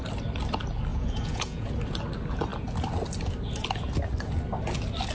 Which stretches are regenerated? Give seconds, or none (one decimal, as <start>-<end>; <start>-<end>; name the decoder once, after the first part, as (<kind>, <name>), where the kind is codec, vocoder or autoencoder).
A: 0.9-1.7 (vocoder, Vocos)